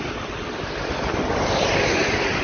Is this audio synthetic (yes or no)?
no